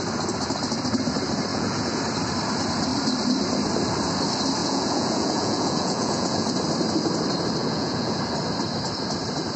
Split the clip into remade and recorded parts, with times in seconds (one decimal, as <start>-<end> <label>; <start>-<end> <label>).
0.0-1.5 recorded; 1.5-2.0 remade; 2.0-4.6 recorded; 4.6-6.5 remade; 6.5-7.6 recorded; 7.6-8.2 remade; 8.2-9.6 recorded